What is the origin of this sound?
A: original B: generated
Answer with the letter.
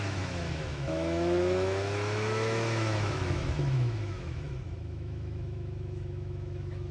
B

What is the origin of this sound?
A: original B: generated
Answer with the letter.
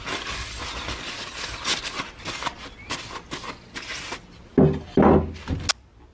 A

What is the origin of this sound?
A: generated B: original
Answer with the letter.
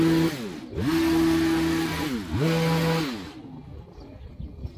B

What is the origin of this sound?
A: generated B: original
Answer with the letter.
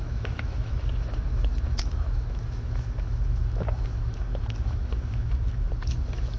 A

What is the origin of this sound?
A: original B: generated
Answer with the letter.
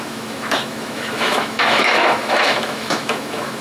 B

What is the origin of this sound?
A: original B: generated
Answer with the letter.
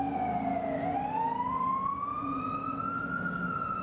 A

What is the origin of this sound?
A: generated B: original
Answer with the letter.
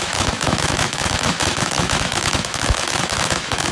A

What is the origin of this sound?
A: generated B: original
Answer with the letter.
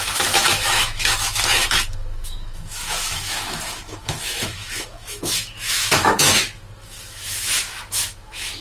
A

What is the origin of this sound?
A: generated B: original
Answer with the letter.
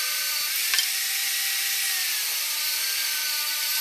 B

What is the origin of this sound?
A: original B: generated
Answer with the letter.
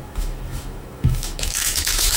B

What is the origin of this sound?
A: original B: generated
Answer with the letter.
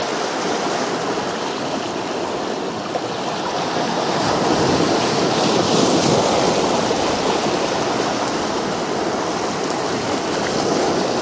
A